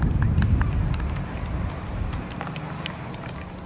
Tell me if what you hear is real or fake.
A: real